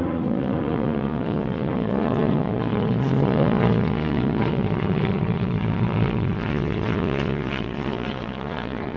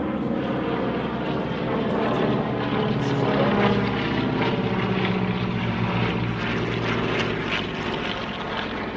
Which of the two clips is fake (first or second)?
first